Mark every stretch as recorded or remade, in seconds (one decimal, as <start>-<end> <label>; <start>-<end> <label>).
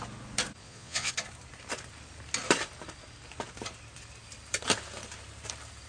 0.0-0.6 recorded; 0.6-1.1 remade; 1.1-5.9 recorded